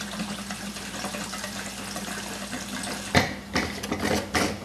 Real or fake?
real